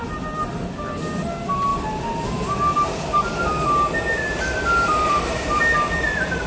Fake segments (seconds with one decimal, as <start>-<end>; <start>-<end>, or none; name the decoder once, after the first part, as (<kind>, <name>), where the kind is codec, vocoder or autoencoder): none

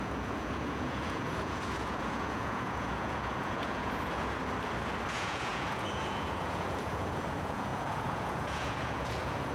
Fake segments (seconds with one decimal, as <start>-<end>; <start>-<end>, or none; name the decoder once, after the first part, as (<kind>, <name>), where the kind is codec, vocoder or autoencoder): 0.0-4.4 (vocoder, Vocos); 5.1-9.5